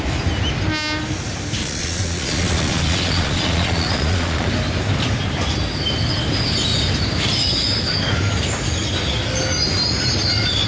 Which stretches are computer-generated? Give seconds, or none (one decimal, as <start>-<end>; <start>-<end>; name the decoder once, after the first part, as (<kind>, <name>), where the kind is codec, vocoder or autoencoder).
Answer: 1.6-4.5 (vocoder, Vocos)